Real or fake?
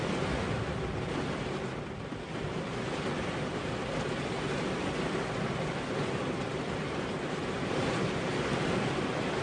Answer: real